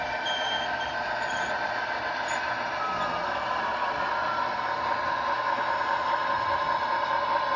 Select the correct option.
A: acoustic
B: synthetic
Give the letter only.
A